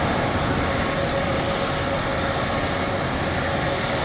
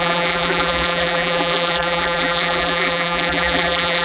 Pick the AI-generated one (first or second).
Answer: second